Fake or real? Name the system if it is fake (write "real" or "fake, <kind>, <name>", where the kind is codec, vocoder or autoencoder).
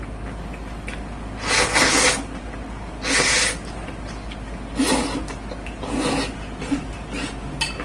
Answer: real